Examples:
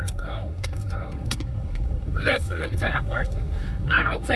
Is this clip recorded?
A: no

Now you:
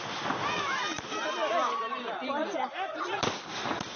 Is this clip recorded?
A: yes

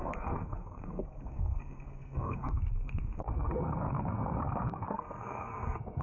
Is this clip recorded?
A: no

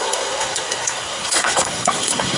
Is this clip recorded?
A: no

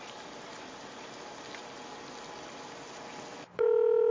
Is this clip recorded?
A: yes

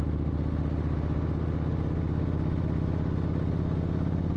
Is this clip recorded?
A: yes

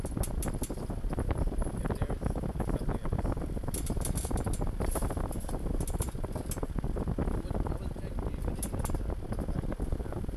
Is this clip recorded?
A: yes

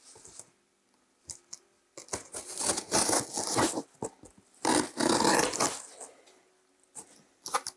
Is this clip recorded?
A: yes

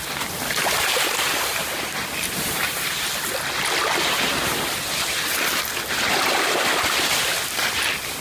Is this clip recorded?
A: yes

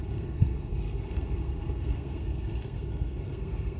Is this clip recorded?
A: no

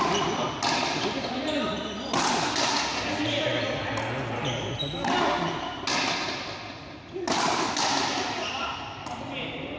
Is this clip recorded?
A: yes